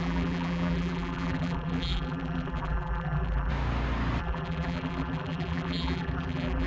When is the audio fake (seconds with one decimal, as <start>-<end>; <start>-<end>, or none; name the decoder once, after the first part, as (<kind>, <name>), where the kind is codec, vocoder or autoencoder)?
0.0-3.5 (vocoder, BigVGAN v2); 4.2-6.7